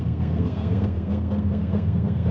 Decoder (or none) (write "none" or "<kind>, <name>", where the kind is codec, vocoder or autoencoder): codec, SNAC